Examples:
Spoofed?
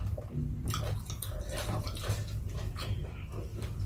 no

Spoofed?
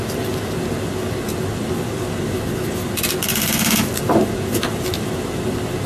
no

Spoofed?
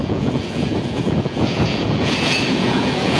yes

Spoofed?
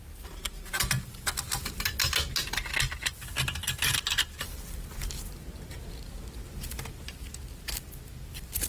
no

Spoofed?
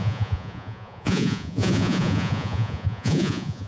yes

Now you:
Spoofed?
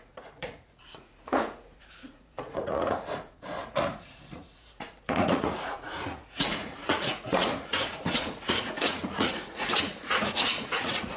yes